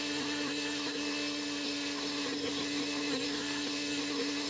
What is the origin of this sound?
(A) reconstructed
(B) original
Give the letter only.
A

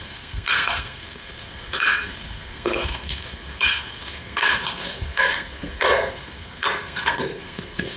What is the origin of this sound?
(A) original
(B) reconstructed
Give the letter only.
B